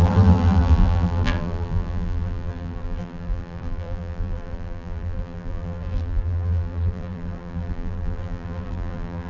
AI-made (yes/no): yes